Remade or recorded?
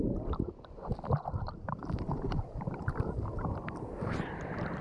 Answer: recorded